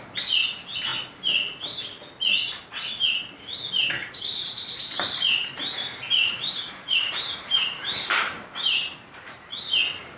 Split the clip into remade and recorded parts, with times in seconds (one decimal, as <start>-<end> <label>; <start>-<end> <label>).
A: 0.0-4.3 recorded; 4.3-9.5 remade; 9.5-10.2 recorded